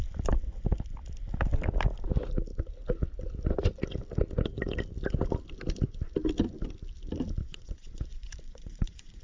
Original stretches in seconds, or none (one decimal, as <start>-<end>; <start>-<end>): 0.0-7.4